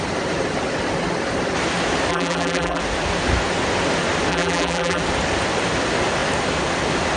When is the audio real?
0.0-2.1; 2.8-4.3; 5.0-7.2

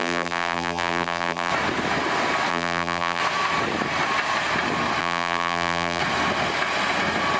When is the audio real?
1.5-2.5; 3.2-5.0; 6.0-7.4

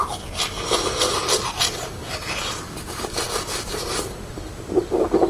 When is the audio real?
0.0-2.0; 4.0-5.3

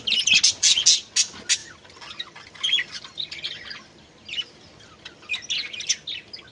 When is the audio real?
0.0-1.6; 5.3-6.5

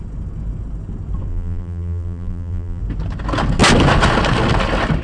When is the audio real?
0.0-1.3; 2.8-5.0

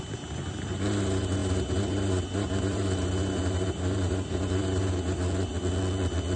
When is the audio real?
5.5-6.4

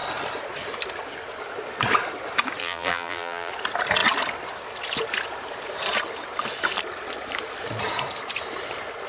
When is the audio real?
0.0-2.6; 3.5-9.1